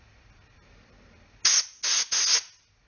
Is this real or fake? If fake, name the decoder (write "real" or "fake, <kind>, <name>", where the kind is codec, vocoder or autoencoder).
real